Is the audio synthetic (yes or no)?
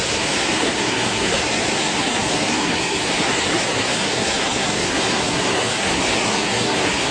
yes